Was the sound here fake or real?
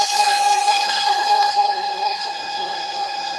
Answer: fake